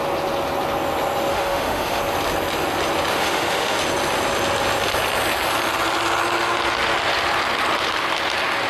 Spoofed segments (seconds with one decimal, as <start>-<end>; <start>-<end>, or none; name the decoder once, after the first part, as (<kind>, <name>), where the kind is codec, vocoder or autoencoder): 1.3-2.0 (autoencoder, DAC-VAE); 3.1-3.8